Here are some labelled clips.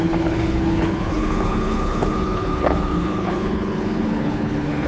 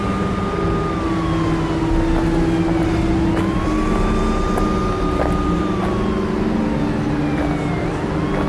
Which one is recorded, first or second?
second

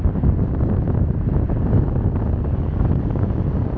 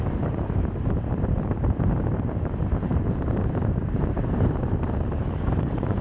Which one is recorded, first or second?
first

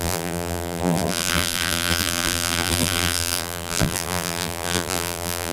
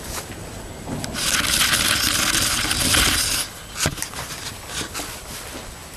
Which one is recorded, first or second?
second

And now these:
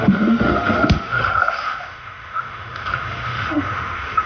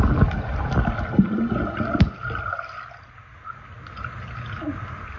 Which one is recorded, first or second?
second